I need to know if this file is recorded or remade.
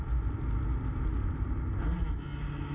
recorded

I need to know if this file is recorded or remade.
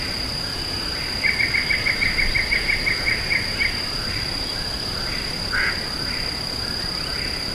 recorded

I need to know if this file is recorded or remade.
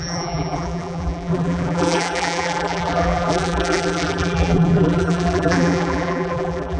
remade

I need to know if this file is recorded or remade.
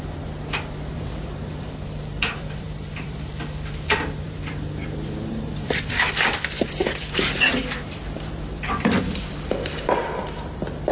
remade